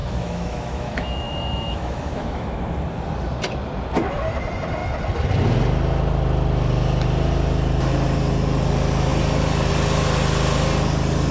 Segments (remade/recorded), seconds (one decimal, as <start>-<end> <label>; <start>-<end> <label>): 0.0-2.6 remade; 2.6-11.3 recorded